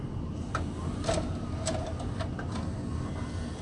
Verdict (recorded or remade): recorded